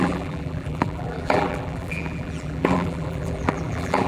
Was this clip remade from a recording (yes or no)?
yes